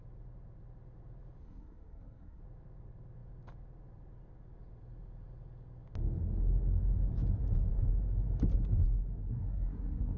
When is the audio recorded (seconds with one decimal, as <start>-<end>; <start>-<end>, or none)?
0.0-1.4; 2.4-9.2